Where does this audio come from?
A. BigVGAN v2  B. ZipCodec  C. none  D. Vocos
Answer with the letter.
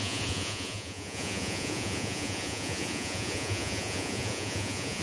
D